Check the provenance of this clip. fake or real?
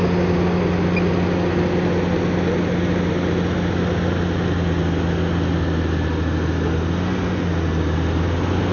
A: real